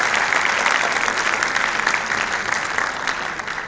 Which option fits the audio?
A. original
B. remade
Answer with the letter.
A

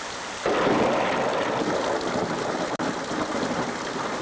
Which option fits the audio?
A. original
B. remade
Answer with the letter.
A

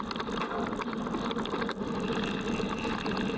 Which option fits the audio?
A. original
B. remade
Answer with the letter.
A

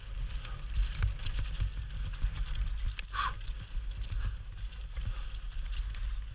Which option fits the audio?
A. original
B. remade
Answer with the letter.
A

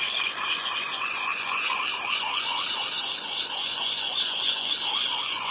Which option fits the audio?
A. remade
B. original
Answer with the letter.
A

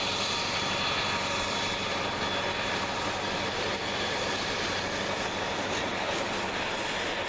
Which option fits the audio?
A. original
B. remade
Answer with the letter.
A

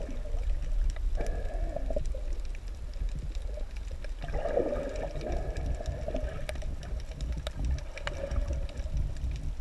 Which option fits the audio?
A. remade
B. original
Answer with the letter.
B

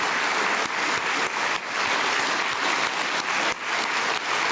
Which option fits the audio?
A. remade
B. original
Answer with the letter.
B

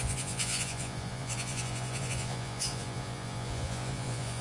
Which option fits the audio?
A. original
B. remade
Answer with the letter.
B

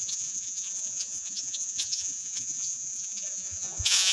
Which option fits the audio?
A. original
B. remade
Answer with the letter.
B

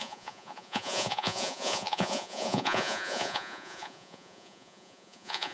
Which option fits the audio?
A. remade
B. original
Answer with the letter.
A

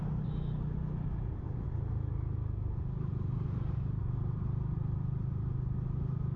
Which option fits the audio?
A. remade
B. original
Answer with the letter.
B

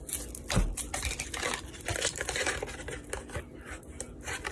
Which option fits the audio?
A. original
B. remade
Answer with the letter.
A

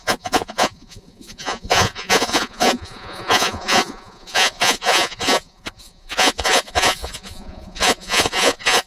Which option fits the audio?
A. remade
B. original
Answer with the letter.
A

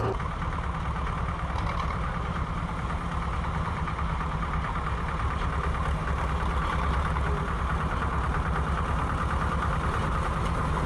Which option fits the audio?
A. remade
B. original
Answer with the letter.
B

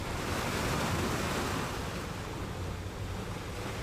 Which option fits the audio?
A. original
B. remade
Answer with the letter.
A